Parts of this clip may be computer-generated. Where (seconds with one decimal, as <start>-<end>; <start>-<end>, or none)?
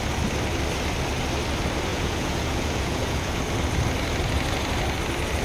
1.9-3.4